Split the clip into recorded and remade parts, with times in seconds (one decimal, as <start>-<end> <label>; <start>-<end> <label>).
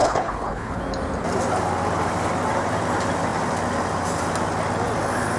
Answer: 0.0-0.8 remade; 0.8-5.4 recorded